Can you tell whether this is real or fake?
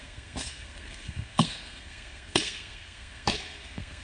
fake